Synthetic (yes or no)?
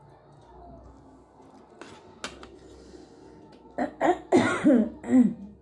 no